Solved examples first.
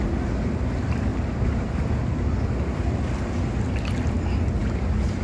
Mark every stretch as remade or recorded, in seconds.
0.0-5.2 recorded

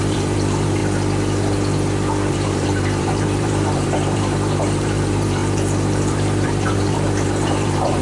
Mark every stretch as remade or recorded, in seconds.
0.0-0.8 remade; 0.8-2.3 recorded; 2.3-8.0 remade

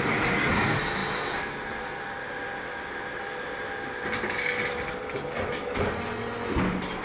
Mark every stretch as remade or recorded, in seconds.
0.0-7.0 recorded

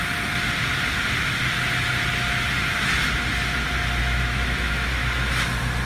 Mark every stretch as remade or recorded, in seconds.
0.0-4.0 recorded; 4.0-4.9 remade; 4.9-5.9 recorded

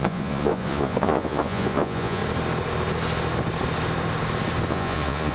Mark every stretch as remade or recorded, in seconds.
0.0-2.2 remade; 2.2-4.7 recorded; 4.7-5.3 remade

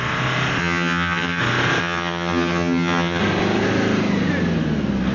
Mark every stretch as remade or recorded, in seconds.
0.0-0.6 recorded; 0.6-1.4 remade; 1.4-1.8 recorded; 1.8-3.2 remade; 3.2-5.1 recorded

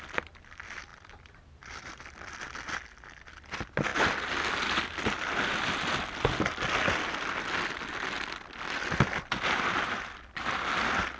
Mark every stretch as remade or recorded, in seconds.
0.0-11.2 recorded